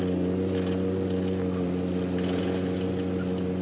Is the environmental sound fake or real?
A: real